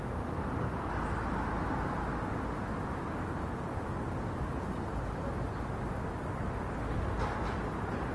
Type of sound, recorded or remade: recorded